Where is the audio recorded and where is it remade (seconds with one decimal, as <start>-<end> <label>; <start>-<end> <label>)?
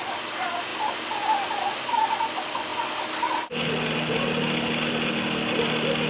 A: 0.0-6.1 recorded